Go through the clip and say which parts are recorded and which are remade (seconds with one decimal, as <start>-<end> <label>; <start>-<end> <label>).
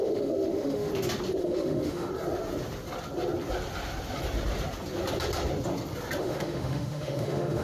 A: 0.0-0.9 remade; 0.9-1.4 recorded; 1.4-2.1 remade; 2.1-6.2 recorded; 6.2-7.6 remade